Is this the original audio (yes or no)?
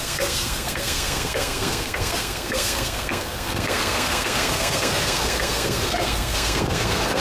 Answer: no